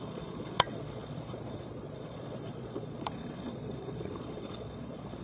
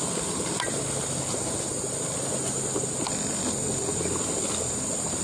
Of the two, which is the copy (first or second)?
first